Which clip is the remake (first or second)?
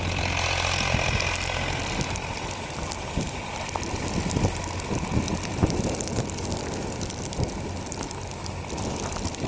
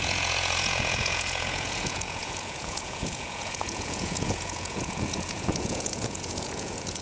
second